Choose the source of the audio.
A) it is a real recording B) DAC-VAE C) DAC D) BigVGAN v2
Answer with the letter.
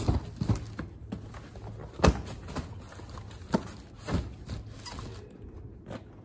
A